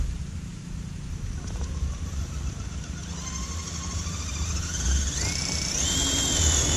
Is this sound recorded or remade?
remade